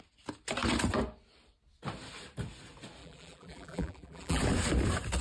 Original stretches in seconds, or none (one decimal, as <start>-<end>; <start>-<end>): 0.0-3.0; 4.4-5.2